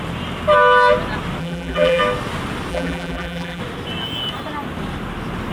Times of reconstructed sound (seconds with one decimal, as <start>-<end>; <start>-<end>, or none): 1.4-2.0; 2.7-3.6